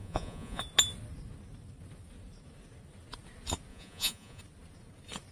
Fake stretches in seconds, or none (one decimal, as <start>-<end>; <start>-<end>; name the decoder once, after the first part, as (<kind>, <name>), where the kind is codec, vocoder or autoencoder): 0.0-0.6 (vocoder, Vocos); 3.7-4.4